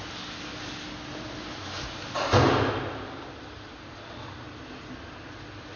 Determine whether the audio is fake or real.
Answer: real